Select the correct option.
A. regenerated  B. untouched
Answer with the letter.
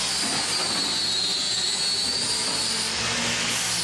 B